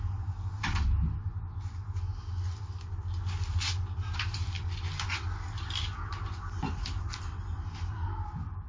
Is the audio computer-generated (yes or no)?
no